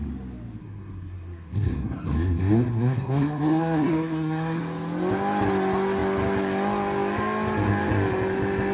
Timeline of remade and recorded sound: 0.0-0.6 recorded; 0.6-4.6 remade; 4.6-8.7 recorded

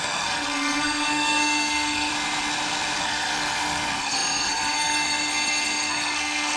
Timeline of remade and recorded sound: 0.0-2.1 remade; 2.1-3.0 recorded; 3.0-6.6 remade

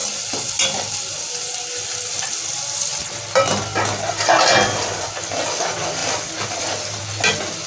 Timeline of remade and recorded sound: 0.0-7.7 recorded

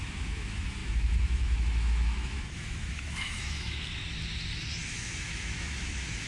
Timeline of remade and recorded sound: 0.0-4.0 remade; 4.0-4.9 recorded; 4.9-6.3 remade

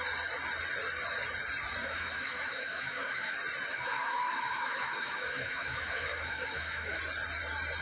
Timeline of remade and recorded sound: 0.0-1.8 recorded; 1.8-3.3 remade; 3.3-3.7 recorded; 3.7-7.0 remade; 7.0-7.8 recorded

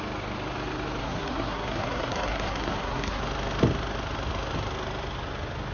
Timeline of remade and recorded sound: 0.0-1.0 recorded; 1.0-3.2 remade; 3.2-5.7 recorded

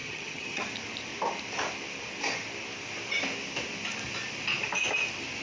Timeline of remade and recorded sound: 0.0-0.6 remade; 0.6-5.4 recorded

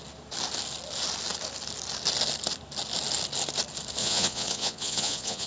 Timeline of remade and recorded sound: 0.0-4.0 recorded; 4.0-5.5 remade